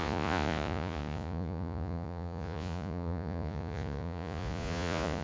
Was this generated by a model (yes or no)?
yes